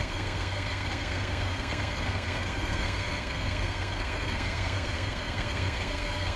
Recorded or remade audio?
remade